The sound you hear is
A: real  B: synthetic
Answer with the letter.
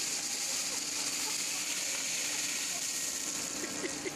A